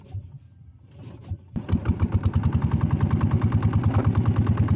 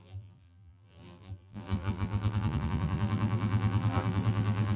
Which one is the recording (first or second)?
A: first